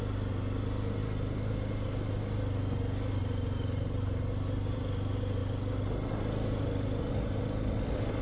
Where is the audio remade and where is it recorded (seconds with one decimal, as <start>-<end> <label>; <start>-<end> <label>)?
0.0-1.0 recorded; 1.0-2.2 remade; 2.2-3.2 recorded; 3.2-4.8 remade; 4.8-8.2 recorded